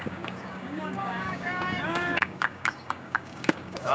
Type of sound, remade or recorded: remade